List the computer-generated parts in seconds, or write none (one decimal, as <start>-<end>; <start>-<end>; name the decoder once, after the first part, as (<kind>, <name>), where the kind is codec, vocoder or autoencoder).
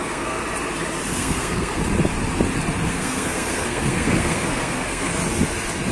0.0-0.4 (codec, SNAC); 1.1-1.8; 2.9-5.1